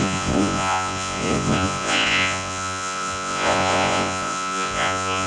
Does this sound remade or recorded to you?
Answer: remade